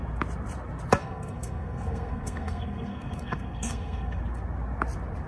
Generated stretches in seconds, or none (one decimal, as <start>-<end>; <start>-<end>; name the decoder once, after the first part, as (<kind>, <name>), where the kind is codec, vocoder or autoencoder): 1.0-4.2 (codec, SNAC)